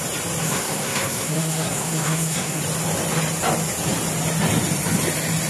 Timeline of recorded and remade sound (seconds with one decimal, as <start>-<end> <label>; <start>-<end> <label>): 0.0-0.4 recorded; 0.4-2.6 remade; 2.6-5.5 recorded